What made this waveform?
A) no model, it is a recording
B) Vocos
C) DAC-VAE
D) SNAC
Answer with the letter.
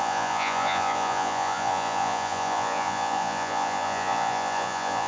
B